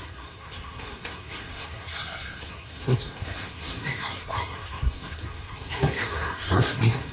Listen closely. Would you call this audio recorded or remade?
remade